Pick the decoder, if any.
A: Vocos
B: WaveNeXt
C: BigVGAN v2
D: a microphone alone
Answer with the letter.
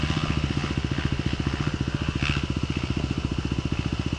D